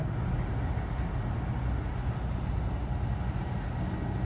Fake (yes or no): no